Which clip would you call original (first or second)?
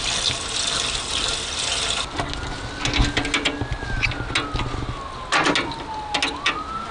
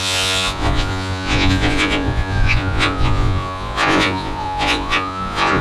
first